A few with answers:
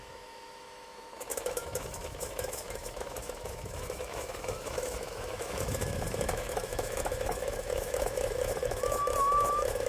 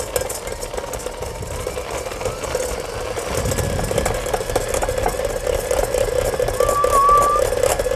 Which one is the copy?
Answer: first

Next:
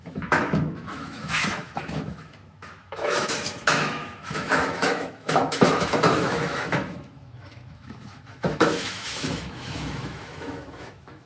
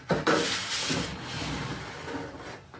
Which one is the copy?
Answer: first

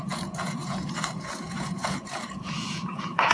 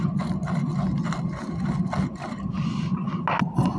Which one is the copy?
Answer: first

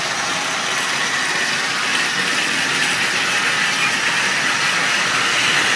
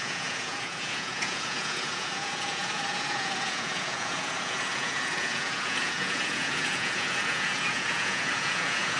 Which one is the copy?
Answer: second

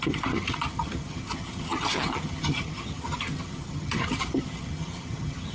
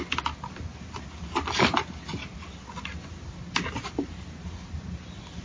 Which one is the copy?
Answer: first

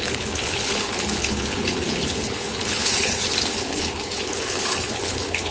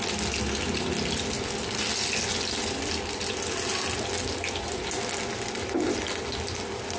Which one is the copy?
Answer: first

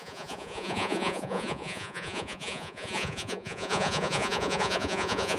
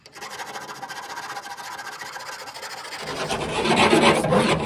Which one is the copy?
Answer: first